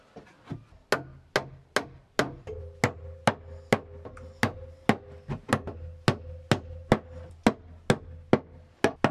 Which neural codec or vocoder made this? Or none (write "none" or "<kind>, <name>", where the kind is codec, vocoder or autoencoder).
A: none